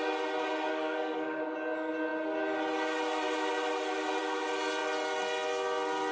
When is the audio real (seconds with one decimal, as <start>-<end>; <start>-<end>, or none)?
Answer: 0.0-0.7; 1.4-6.1